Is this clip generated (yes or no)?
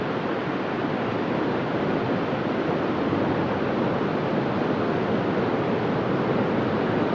no